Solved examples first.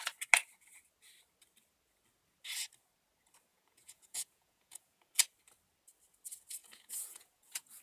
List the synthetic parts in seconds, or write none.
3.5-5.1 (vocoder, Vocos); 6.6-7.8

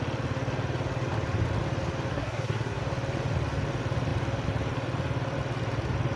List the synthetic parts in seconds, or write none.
2.1-2.8 (codec, SNAC)

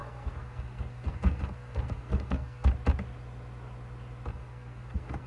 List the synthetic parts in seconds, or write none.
0.0-2.7 (codec, SNAC); 4.3-5.3

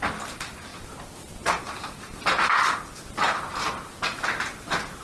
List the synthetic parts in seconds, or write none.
0.0-0.7 (vocoder, BigVGAN v2); 3.7-5.0

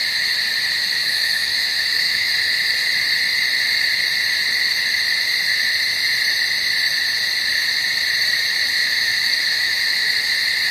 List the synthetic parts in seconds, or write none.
1.0-2.3 (autoencoder, DAC-VAE); 8.8-10.1